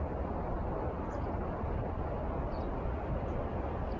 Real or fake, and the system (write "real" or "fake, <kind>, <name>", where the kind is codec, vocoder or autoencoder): real